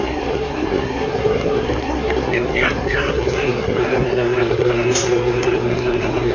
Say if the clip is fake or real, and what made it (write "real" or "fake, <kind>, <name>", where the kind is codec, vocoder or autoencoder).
fake, codec, SNAC